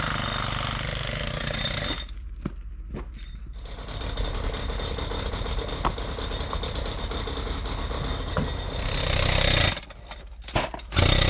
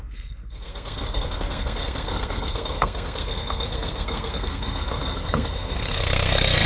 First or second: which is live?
first